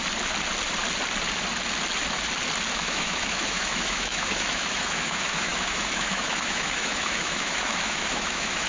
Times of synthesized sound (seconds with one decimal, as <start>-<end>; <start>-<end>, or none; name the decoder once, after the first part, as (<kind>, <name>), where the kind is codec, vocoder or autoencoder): 2.7-8.7 (autoencoder, DAC-VAE)